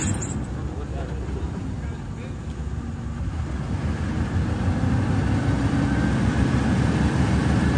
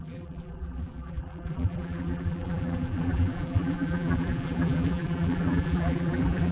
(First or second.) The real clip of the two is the first